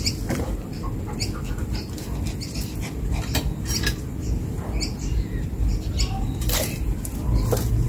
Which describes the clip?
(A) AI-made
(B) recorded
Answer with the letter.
B